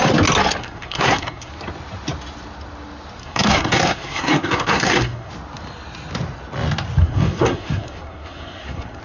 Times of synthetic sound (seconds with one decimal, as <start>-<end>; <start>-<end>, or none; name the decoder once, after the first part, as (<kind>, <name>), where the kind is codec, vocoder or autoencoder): 0.6-1.5 (codec, SNAC); 3.2-5.3; 7.0-9.0